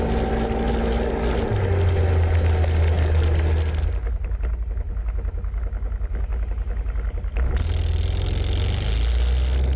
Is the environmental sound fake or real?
real